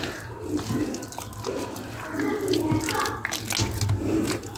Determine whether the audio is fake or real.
real